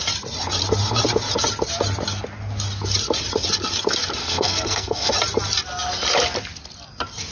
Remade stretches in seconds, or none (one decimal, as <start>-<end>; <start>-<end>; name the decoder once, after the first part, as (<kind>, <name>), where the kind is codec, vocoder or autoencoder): 4.2-5.1 (codec, SNAC)